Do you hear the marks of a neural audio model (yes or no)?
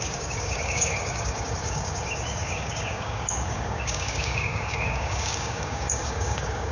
yes